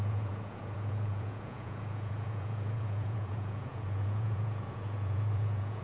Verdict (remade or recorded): remade